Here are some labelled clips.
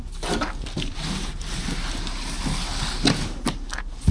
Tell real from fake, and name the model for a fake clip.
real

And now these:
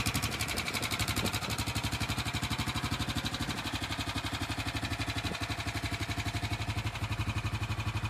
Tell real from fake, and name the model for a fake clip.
real